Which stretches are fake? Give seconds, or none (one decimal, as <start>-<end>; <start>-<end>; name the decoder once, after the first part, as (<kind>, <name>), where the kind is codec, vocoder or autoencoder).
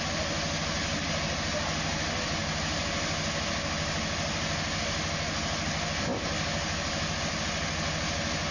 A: none